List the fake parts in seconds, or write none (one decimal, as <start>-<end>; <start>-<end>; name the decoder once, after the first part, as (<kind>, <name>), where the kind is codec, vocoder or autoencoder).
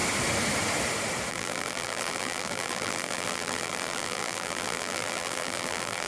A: 1.3-6.1 (vocoder, BigVGAN v2)